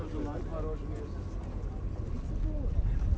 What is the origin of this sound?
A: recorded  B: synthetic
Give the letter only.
A